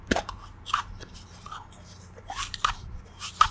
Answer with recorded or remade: remade